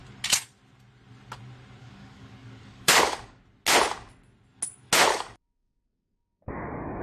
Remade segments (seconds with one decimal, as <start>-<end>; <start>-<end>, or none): 1.8-3.4; 5.1-7.0